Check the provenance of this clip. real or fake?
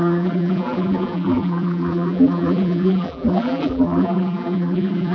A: fake